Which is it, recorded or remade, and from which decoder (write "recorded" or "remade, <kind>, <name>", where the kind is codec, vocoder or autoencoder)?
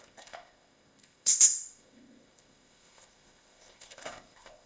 remade, codec, ZipCodec